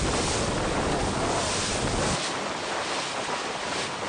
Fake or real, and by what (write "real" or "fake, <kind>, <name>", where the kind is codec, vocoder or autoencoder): real